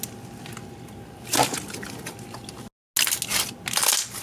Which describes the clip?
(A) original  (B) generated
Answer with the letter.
A